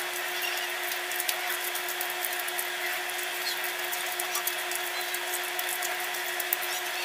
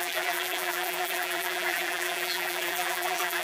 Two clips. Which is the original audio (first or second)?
first